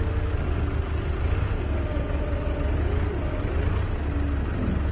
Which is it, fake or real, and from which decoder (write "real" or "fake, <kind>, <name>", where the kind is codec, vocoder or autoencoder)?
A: real